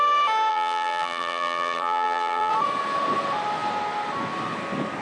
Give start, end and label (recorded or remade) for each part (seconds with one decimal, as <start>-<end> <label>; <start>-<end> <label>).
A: 0.0-0.5 recorded; 0.5-2.5 remade; 2.5-5.0 recorded